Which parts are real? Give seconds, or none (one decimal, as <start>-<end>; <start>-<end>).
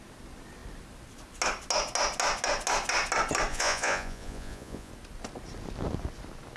0.0-3.5; 4.9-6.6